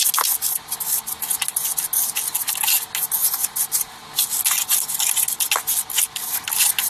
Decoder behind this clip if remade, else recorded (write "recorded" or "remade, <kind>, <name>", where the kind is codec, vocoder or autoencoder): recorded